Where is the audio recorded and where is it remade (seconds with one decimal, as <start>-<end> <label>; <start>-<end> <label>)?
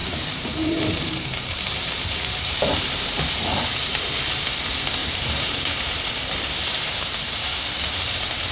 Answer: 0.0-3.3 remade; 3.3-5.0 recorded; 5.0-7.5 remade; 7.5-8.5 recorded